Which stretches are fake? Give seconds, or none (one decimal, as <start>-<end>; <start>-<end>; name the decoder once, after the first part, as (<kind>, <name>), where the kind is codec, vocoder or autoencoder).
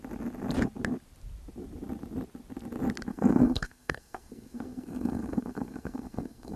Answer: 3.1-6.6 (codec, SNAC)